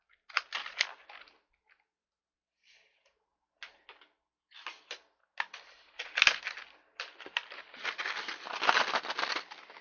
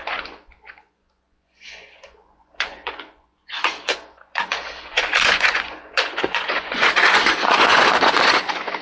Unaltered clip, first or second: first